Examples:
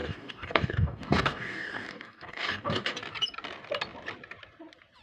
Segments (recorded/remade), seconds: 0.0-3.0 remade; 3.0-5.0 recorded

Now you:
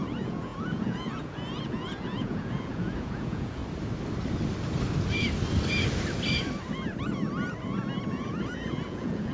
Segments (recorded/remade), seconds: 0.0-3.6 remade; 3.6-8.1 recorded; 8.1-9.3 remade

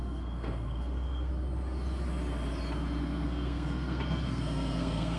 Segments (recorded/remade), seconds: 0.0-1.3 remade; 1.3-3.0 recorded; 3.0-5.2 remade

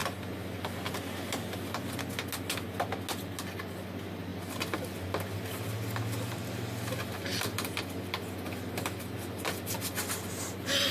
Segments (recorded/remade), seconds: 0.0-10.9 recorded

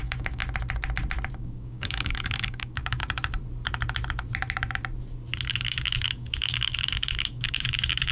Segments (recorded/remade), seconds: 0.0-0.4 remade; 0.4-1.4 recorded; 1.4-3.0 remade; 3.0-5.5 recorded; 5.5-8.1 remade

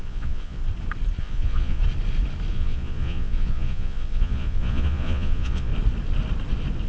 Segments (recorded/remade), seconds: 0.0-0.6 remade; 0.6-1.2 recorded; 1.2-1.8 remade; 1.8-2.5 recorded; 2.5-5.7 remade; 5.7-6.9 recorded